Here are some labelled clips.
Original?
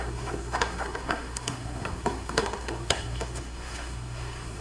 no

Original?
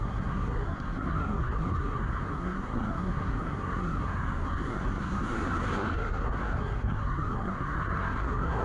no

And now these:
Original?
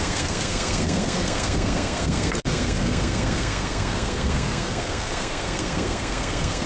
no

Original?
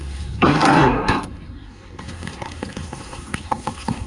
no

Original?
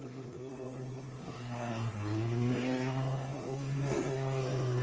no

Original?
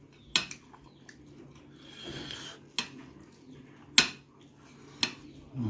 yes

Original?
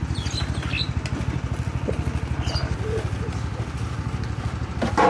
yes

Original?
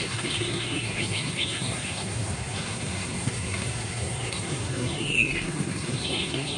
no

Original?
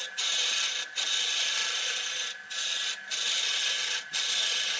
yes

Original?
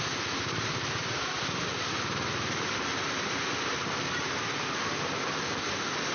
yes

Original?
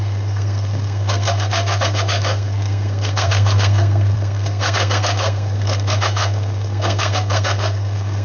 no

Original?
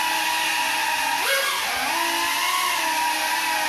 yes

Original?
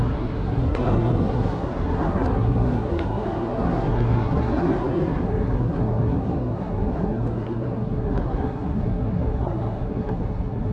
no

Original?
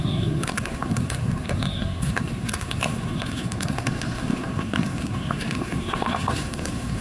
no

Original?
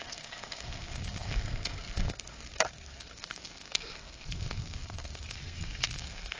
no